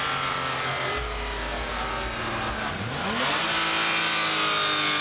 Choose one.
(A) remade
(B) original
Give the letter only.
B